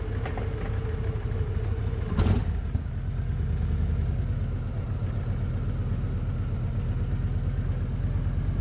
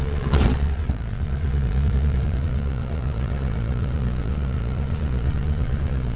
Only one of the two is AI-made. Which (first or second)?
second